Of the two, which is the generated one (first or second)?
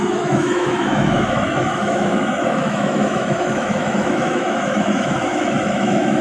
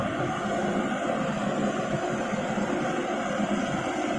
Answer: first